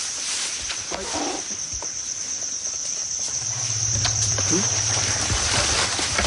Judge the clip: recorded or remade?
remade